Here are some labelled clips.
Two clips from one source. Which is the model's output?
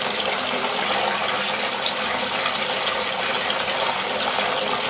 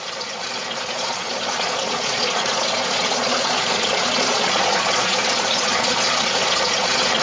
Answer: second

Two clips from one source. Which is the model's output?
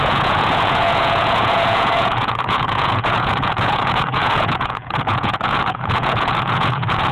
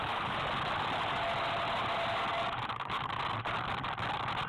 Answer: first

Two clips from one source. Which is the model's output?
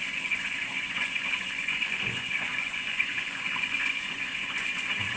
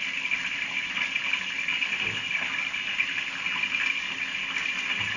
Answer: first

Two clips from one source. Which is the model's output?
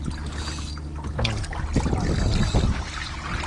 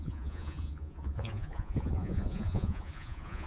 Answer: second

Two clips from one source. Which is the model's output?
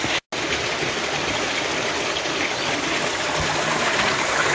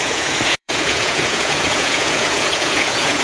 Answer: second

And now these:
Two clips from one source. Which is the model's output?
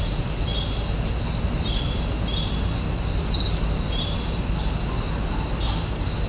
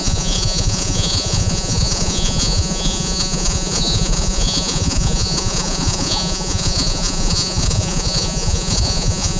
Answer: second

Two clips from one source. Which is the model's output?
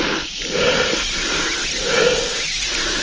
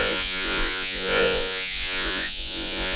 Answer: second